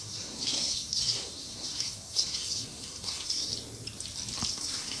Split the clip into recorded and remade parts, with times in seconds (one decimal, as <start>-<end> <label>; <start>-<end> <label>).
0.0-3.5 remade; 3.5-4.5 recorded; 4.5-5.0 remade